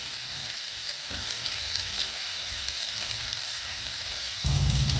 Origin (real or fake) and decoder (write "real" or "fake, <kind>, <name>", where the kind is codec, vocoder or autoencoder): fake, codec, DAC